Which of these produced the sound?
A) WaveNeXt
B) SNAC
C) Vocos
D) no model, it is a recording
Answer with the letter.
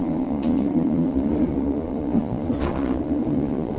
C